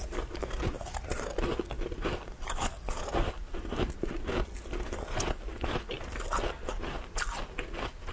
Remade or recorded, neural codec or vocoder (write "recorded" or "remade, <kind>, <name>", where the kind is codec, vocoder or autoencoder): recorded